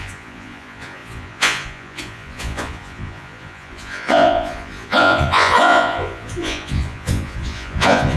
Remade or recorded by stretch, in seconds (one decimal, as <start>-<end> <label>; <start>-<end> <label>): 0.0-8.2 remade